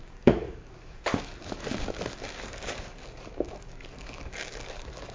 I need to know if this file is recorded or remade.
remade